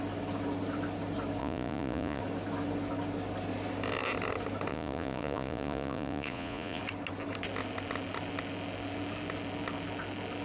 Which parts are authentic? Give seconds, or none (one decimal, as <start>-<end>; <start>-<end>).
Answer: 0.0-1.4; 2.2-4.7; 6.8-10.4